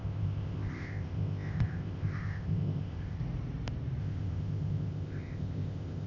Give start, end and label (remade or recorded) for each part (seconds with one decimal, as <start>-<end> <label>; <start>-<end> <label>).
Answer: 0.0-3.2 remade; 3.2-4.0 recorded; 4.0-6.1 remade